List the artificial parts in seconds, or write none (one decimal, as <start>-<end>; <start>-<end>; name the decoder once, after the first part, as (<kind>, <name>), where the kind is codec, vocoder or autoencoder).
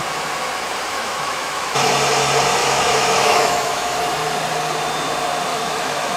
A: 0.9-1.9 (autoencoder, DAC-VAE); 2.6-4.0; 5.5-6.2